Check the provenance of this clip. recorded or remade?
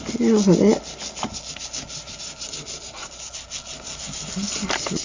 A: recorded